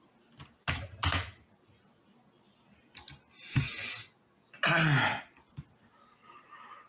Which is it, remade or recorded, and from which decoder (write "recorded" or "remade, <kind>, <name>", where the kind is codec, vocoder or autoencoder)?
recorded